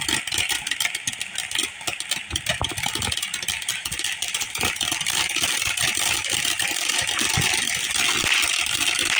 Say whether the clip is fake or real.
real